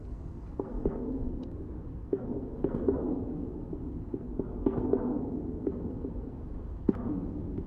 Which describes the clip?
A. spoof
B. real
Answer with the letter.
A